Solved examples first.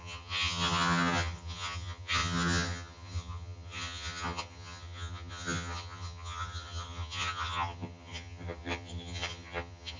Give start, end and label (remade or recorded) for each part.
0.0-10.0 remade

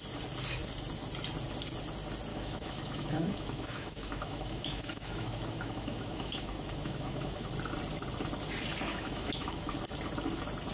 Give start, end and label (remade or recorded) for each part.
0.0-2.3 recorded; 2.3-7.5 remade; 7.5-8.9 recorded; 8.9-9.7 remade; 9.7-10.7 recorded

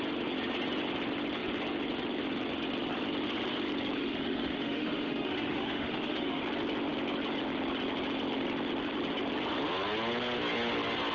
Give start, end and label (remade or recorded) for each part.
0.0-4.0 recorded; 4.0-6.4 remade; 6.4-11.1 recorded

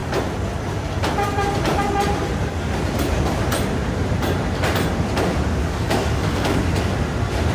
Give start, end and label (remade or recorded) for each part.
0.0-5.6 recorded; 5.6-6.6 remade; 6.6-7.5 recorded

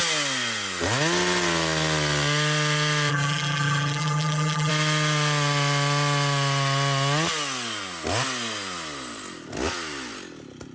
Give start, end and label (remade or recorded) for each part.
0.0-3.1 recorded; 3.1-4.7 remade; 4.7-10.7 recorded

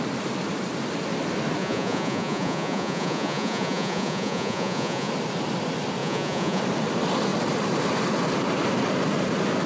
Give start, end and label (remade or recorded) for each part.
0.0-1.6 recorded; 1.6-5.1 remade; 5.1-6.0 recorded; 6.0-6.6 remade; 6.6-9.7 recorded

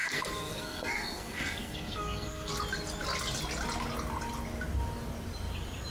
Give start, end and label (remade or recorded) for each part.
0.0-2.5 remade; 2.5-5.9 recorded